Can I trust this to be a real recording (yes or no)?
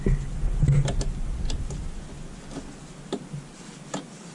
yes